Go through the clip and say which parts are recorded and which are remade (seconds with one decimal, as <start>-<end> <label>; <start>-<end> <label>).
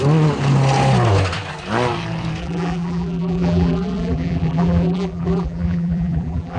0.0-2.4 recorded; 2.4-6.6 remade